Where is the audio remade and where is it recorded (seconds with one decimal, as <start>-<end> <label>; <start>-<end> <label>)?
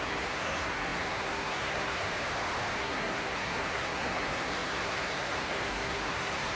0.0-2.1 remade; 2.1-2.8 recorded; 2.8-6.6 remade